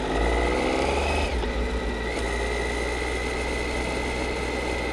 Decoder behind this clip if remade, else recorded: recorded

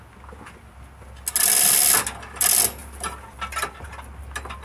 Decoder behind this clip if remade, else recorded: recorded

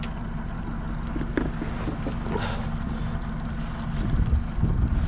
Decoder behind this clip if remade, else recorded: recorded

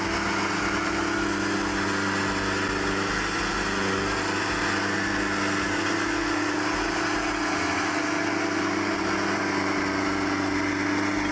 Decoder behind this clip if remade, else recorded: recorded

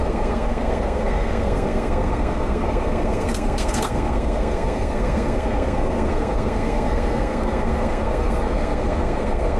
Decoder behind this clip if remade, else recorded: remade, codec, SNAC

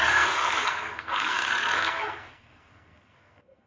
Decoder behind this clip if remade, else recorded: remade, codec, SNAC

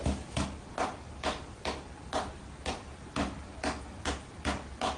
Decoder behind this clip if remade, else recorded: recorded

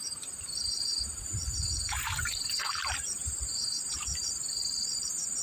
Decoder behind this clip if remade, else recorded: remade, vocoder, BigVGAN v2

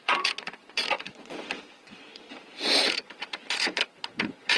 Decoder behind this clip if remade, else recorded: remade, vocoder, Vocos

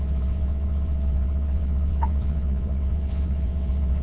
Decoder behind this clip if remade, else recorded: remade, vocoder, WaveNeXt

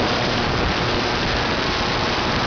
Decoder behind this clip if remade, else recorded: recorded